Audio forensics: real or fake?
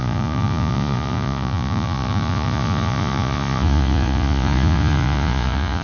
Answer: fake